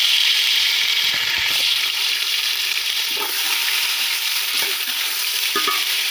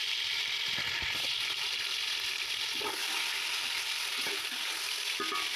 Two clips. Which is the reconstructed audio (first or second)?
first